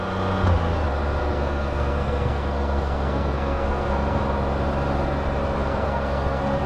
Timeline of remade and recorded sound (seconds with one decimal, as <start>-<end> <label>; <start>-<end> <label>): 0.0-1.2 recorded; 1.2-4.2 remade; 4.2-5.6 recorded; 5.6-6.7 remade